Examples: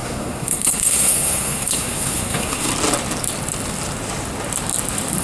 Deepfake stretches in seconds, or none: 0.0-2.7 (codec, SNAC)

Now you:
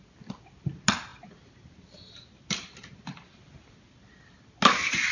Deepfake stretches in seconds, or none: 1.1-4.2 (vocoder, BigVGAN v2)

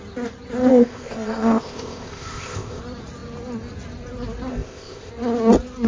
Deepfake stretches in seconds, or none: 0.7-2.8 (codec, ZipCodec); 4.5-5.1

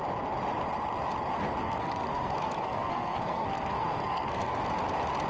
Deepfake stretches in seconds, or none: 1.6-4.6 (codec, SNAC)